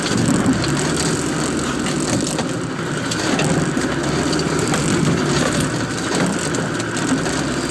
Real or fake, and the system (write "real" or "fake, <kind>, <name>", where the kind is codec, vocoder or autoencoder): real